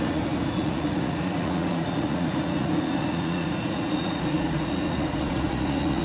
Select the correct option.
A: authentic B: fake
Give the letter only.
B